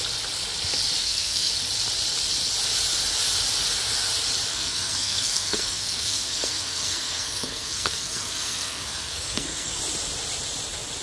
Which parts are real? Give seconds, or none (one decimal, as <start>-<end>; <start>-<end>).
0.0-1.0; 1.5-4.5; 9.8-11.0